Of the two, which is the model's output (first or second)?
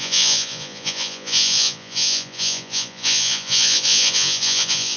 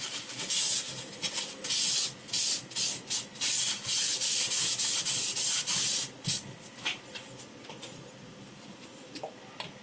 first